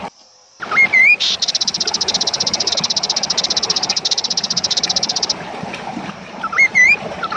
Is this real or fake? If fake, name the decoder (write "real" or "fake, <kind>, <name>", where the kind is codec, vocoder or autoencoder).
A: fake, vocoder, BigVGAN v2